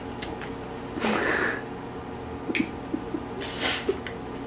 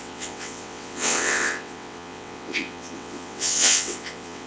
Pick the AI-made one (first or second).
second